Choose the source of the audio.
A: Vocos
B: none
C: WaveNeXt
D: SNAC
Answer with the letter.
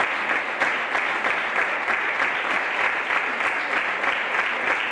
B